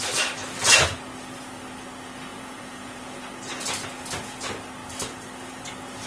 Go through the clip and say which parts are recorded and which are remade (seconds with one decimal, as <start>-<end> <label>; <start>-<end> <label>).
0.0-2.3 recorded; 2.3-3.3 remade; 3.3-6.1 recorded